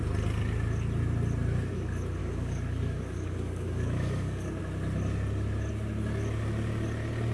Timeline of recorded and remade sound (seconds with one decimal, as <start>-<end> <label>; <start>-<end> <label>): 0.0-2.2 recorded; 2.2-4.6 remade; 4.6-7.3 recorded

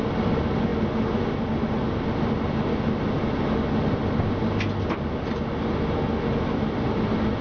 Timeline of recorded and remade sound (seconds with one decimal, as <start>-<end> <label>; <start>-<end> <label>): 0.0-7.4 recorded

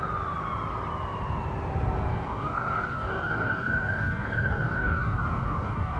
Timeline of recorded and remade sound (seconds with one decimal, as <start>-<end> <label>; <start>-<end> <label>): 0.0-2.1 recorded; 2.1-6.0 remade

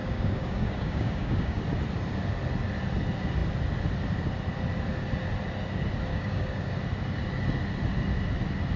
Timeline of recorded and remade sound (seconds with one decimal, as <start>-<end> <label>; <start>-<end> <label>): 0.0-1.6 remade; 1.6-6.1 recorded; 6.1-6.7 remade; 6.7-8.8 recorded

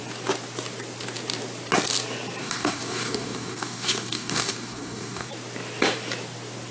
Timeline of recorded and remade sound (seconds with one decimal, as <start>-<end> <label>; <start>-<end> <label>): 0.0-2.4 recorded; 2.4-5.3 remade; 5.3-6.7 recorded

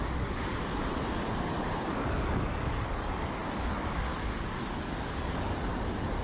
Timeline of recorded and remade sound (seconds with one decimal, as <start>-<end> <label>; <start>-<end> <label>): 0.0-0.5 remade; 0.5-1.9 recorded; 1.9-6.2 remade

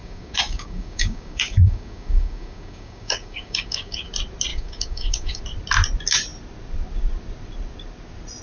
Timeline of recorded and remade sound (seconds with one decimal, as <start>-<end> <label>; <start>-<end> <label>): 0.0-4.1 remade; 4.1-4.5 recorded; 4.5-5.4 remade; 5.4-8.4 recorded